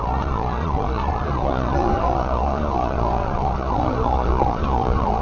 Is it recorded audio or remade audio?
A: remade